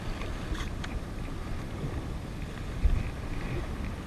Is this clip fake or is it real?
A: real